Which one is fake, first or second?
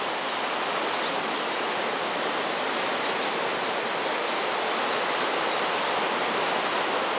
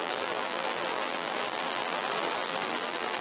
second